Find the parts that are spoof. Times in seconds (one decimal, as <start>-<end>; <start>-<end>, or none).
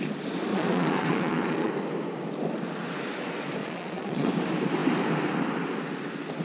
0.5-1.7; 3.6-4.3